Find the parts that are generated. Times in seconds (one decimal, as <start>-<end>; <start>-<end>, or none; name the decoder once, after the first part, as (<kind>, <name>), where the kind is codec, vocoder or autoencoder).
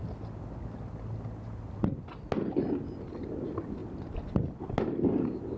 none